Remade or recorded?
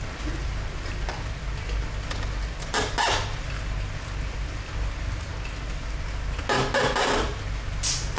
recorded